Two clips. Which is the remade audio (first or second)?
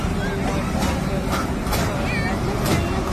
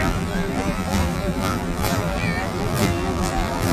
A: second